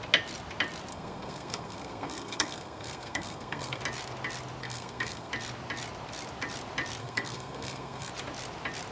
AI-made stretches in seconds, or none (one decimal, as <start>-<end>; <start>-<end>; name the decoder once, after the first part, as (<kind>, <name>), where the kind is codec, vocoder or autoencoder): 0.9-3.8 (codec, SNAC); 4.6-5.3; 7.0-8.1